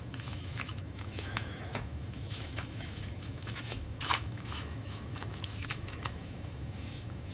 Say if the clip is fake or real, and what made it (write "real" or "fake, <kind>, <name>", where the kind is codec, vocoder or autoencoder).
fake, autoencoder, DAC-VAE